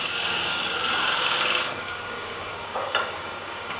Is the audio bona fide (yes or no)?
no